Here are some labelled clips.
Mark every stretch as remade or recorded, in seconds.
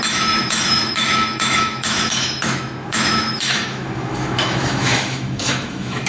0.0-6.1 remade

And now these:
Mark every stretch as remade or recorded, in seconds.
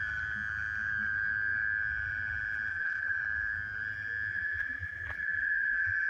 0.0-2.7 recorded; 2.7-3.2 remade; 3.2-4.3 recorded; 4.3-6.1 remade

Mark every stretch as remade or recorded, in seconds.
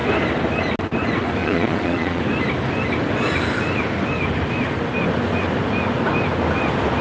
0.0-1.4 recorded; 1.4-2.2 remade; 2.2-7.0 recorded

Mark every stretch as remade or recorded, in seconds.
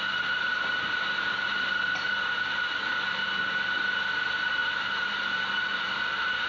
0.0-4.6 recorded; 4.6-6.0 remade; 6.0-6.5 recorded